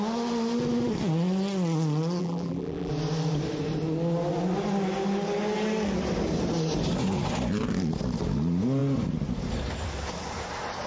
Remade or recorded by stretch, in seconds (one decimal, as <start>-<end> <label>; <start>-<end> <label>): 0.0-2.2 recorded; 2.2-2.9 remade; 2.9-10.9 recorded

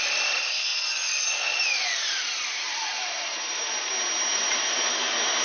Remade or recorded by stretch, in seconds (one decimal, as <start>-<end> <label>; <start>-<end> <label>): 0.0-0.7 recorded; 0.7-3.9 remade; 3.9-4.3 recorded; 4.3-4.9 remade; 4.9-5.4 recorded

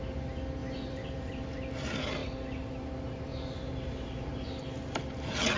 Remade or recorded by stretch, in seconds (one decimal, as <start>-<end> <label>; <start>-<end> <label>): 0.0-0.6 recorded; 0.6-1.3 remade; 1.3-3.3 recorded; 3.3-4.6 remade; 4.6-5.6 recorded

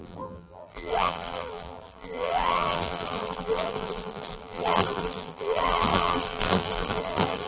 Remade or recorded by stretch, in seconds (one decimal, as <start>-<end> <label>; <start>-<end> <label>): 0.0-7.5 remade

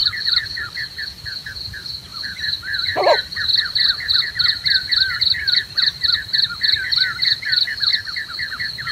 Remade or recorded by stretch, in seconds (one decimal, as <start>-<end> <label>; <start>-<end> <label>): 0.0-0.9 remade; 0.9-2.1 recorded; 2.1-6.9 remade; 6.9-7.9 recorded; 7.9-8.5 remade; 8.5-8.9 recorded